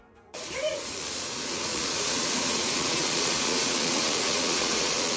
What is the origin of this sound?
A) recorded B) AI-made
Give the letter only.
B